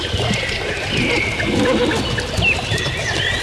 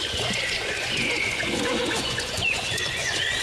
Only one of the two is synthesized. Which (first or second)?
second